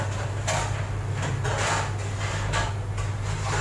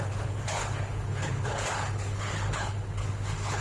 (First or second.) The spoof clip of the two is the second